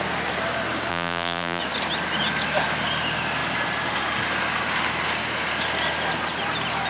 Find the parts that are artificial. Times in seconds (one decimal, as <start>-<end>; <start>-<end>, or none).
0.9-1.6